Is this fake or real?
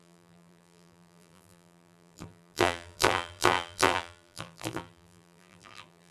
fake